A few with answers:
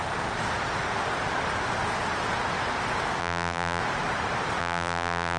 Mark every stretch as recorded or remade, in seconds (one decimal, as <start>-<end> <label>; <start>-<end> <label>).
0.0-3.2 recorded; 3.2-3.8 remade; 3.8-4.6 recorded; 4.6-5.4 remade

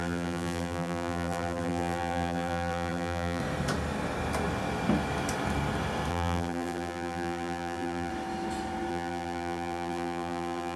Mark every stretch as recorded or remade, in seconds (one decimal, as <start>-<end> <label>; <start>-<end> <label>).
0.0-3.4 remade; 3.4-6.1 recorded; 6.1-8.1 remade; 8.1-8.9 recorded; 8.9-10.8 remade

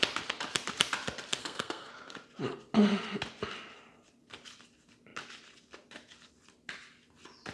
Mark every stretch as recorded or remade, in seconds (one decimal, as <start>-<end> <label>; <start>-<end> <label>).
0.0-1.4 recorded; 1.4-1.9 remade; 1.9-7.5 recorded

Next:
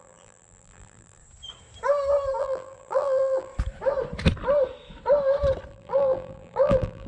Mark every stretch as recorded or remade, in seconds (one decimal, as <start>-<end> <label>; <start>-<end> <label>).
0.0-1.2 remade; 1.2-2.4 recorded; 2.4-3.5 remade; 3.5-5.7 recorded; 5.7-7.1 remade